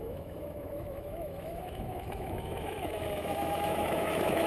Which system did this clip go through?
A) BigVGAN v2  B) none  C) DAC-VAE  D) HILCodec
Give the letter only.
C